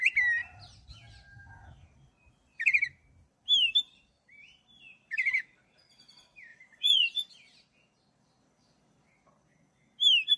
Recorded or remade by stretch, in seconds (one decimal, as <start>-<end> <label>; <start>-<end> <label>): 0.0-6.5 recorded; 6.5-7.3 remade; 7.3-10.4 recorded